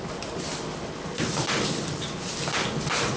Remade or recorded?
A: recorded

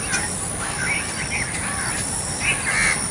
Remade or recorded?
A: recorded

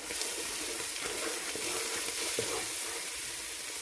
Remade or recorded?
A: recorded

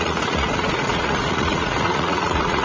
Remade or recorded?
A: remade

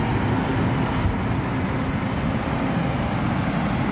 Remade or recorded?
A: recorded